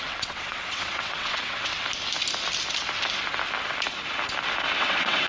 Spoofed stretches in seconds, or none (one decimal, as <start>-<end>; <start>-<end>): 0.0-1.7; 4.8-5.3